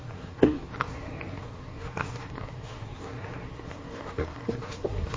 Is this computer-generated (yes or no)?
yes